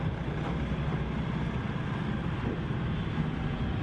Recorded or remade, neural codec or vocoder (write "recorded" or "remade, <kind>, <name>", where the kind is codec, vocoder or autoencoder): recorded